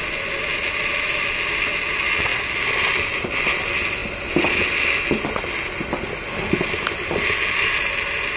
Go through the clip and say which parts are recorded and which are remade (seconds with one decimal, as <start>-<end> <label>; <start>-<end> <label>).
0.0-8.4 recorded